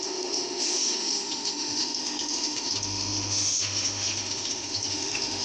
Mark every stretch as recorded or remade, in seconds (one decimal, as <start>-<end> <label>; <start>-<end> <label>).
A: 0.0-5.4 remade